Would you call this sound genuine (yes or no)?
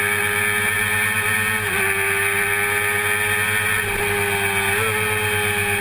yes